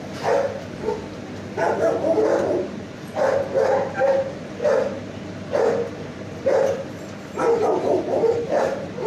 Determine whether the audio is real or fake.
real